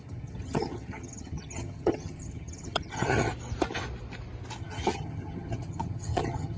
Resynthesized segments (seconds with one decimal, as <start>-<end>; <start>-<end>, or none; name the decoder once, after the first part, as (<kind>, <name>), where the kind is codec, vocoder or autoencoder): 0.0-3.3 (vocoder, HiFi-GAN); 4.6-6.6

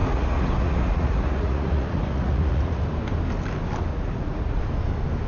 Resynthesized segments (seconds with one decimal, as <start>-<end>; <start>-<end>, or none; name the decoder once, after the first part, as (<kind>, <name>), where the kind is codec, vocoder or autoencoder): 0.0-2.8 (vocoder, Vocos); 3.9-4.6

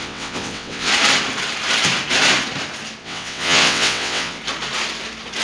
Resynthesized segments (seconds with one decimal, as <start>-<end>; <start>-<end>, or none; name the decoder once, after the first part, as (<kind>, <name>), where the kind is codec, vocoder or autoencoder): 0.0-0.9 (vocoder, WaveNeXt); 3.0-4.4

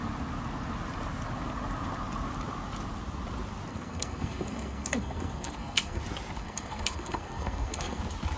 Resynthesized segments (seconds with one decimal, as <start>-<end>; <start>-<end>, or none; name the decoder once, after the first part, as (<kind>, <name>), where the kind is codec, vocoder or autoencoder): 3.7-6.0 (codec, SNAC); 6.4-8.0

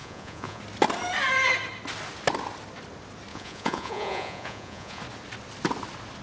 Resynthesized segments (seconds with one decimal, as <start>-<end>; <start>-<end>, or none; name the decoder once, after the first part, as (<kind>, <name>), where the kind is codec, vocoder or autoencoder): 0.0-0.6 (vocoder, Vocos); 3.3-5.0

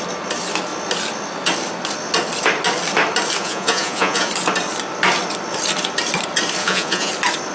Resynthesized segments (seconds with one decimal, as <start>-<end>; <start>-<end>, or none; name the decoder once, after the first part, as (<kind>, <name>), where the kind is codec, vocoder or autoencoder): 3.4-4.3 (vocoder, Vocos); 6.6-7.1

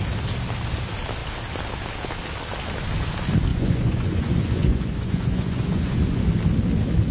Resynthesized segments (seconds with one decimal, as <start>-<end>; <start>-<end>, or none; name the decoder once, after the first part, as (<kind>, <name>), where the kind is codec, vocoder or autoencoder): 3.5-6.2 (vocoder, Vocos)

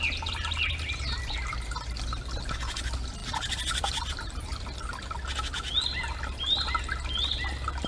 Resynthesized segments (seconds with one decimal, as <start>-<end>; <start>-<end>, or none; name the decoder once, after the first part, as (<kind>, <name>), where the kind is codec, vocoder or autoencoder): 3.2-4.5 (vocoder, BigVGAN v2)